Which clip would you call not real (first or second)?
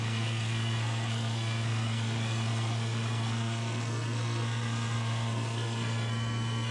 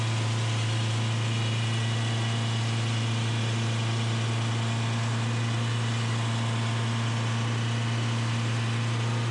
first